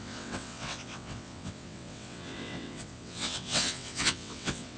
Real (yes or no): no